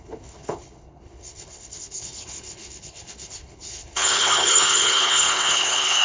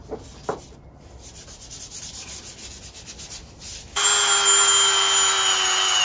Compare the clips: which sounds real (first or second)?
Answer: second